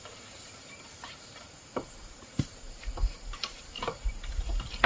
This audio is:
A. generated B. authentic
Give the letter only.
A